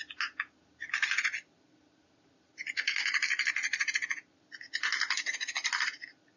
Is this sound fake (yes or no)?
no